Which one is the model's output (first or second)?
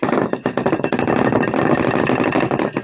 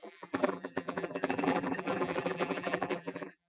second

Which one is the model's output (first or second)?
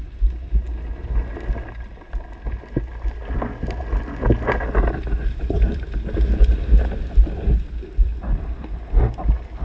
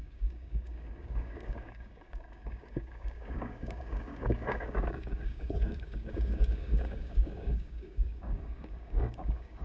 second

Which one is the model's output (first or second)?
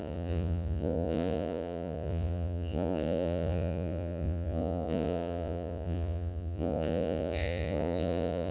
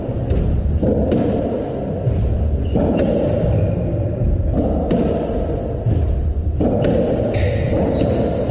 first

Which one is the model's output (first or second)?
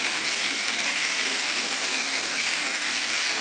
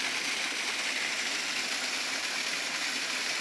first